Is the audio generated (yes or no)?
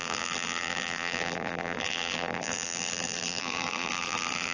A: yes